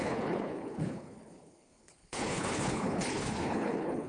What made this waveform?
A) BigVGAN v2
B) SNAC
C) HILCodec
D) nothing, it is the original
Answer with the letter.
C